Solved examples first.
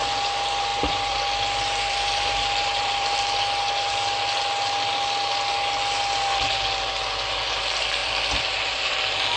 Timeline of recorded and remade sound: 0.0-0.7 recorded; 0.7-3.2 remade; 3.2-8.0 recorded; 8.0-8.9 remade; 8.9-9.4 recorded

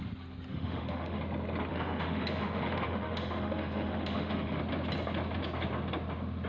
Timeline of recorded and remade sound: 0.0-0.5 recorded; 0.5-1.2 remade; 1.2-1.7 recorded; 1.7-4.6 remade; 4.6-6.5 recorded

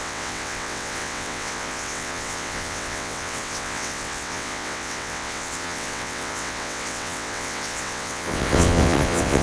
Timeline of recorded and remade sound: 0.0-9.4 remade

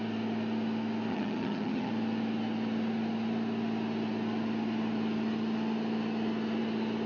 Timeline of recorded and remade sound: 0.0-1.1 recorded; 1.1-1.9 remade; 1.9-7.1 recorded

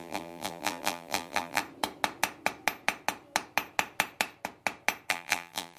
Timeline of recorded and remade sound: 0.0-1.6 remade; 1.6-5.1 recorded; 5.1-5.8 remade

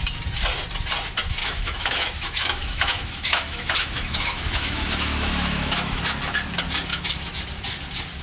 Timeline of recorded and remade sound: 0.0-1.4 recorded; 1.4-6.0 remade; 6.0-6.9 recorded; 6.9-7.4 remade; 7.4-8.2 recorded

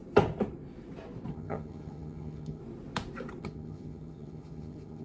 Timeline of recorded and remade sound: 0.0-1.3 recorded; 1.3-2.6 remade; 2.6-3.4 recorded; 3.4-5.0 remade

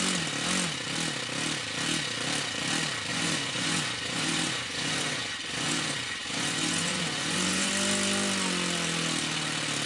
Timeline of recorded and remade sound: 0.0-3.1 recorded; 3.1-7.7 remade; 7.7-9.9 recorded